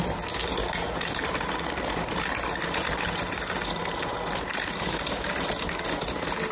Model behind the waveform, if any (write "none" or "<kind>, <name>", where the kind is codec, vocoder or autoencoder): none